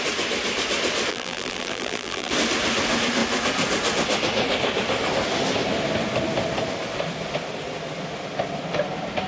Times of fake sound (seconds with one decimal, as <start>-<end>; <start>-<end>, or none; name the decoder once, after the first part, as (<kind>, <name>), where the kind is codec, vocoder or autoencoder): 1.1-2.3 (vocoder, BigVGAN v2)